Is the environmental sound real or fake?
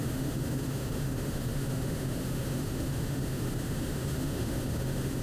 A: fake